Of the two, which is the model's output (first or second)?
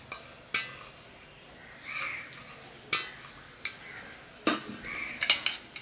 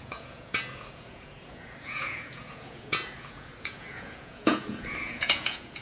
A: second